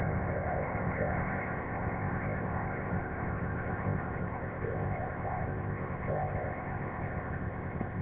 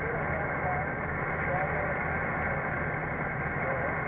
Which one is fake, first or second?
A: first